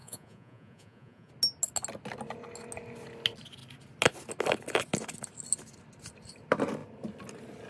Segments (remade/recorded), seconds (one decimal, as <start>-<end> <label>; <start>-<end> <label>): 0.0-1.3 remade; 1.3-7.7 recorded